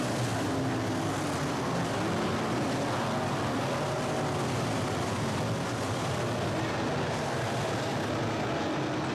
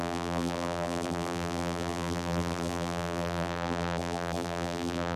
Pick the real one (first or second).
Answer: first